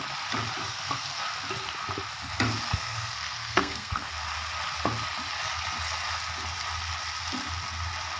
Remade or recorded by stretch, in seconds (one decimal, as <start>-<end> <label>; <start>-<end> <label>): 0.0-0.6 recorded; 0.6-1.2 remade; 1.2-2.7 recorded; 2.7-4.1 remade; 4.1-8.2 recorded